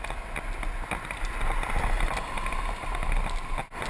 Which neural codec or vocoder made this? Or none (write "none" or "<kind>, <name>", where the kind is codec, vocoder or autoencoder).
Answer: none